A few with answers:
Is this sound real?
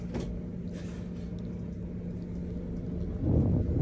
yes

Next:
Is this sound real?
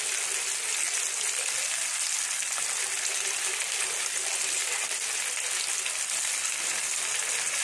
yes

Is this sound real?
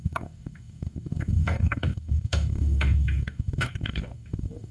no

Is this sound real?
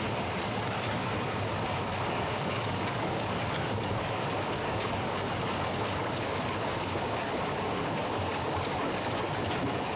no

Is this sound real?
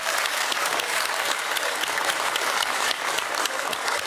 no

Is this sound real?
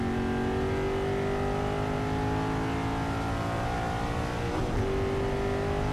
yes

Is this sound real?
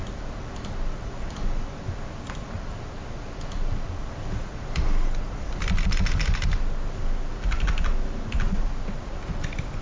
yes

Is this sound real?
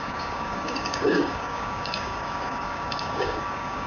no